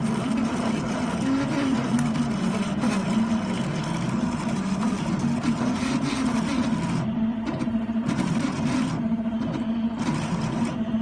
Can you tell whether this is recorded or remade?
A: recorded